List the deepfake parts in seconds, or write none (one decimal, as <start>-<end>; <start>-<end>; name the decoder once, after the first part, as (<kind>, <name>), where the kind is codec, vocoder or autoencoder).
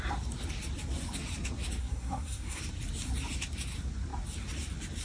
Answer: 1.8-2.6 (codec, SNAC)